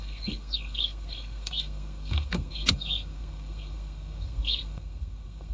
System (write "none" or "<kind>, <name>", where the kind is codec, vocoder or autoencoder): codec, SNAC